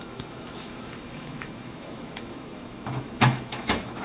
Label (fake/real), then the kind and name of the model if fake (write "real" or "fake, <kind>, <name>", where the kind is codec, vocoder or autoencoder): fake, autoencoder, DAC-VAE